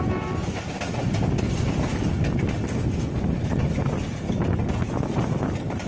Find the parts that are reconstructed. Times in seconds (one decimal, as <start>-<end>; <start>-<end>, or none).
none